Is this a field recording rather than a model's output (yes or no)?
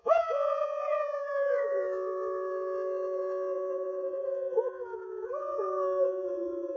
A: no